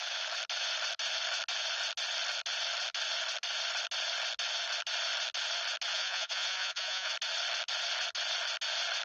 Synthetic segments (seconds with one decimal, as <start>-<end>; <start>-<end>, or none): 5.9-7.1